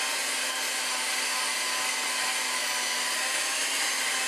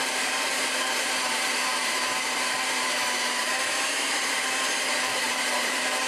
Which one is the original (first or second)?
first